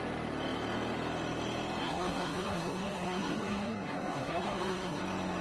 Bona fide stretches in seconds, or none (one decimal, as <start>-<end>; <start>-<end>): 0.0-1.8; 5.0-5.4